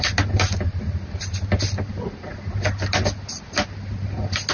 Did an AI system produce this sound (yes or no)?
no